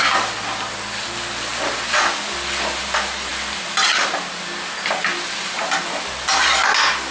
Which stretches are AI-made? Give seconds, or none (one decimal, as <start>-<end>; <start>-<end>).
none